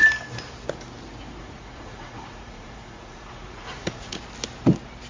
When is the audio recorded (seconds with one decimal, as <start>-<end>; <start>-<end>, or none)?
0.0-1.4; 4.2-5.1